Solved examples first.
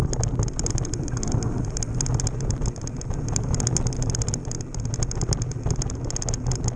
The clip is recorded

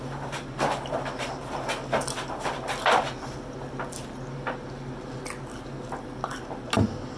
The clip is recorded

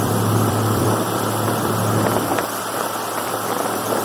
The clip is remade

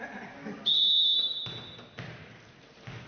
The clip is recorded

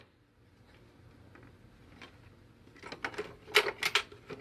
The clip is recorded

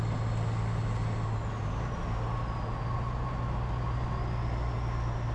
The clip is recorded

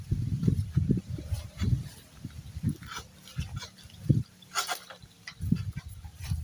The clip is remade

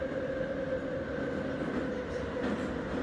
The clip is recorded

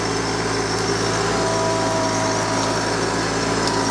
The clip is recorded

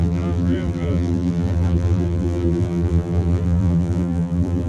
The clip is remade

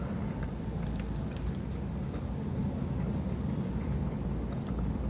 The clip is recorded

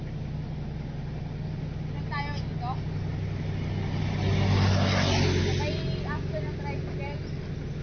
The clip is recorded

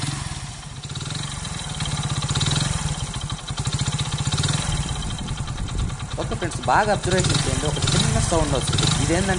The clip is recorded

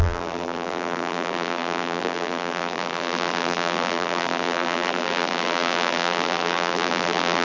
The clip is remade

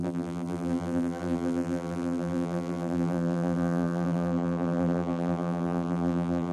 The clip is remade